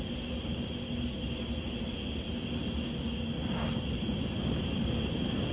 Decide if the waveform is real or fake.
real